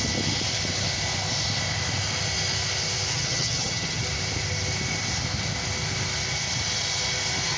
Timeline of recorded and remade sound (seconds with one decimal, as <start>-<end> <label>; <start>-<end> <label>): 0.0-3.1 recorded; 3.1-4.0 remade; 4.0-7.6 recorded